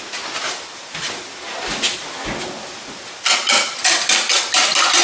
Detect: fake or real real